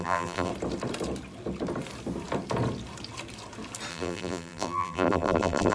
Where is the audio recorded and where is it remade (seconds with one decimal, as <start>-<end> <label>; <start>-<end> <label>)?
0.0-0.5 remade; 0.5-3.9 recorded; 3.9-5.7 remade